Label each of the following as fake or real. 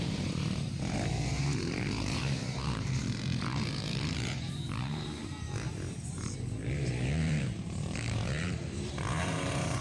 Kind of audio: fake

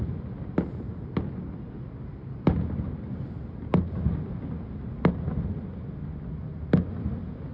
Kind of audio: real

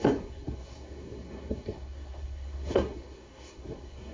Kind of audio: fake